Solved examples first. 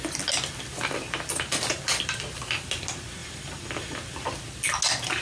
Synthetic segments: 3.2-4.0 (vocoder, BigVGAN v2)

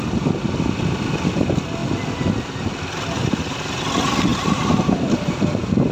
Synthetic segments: 3.2-3.8 (vocoder, BigVGAN v2); 4.3-5.3